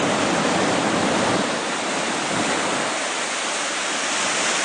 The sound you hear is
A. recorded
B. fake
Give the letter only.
A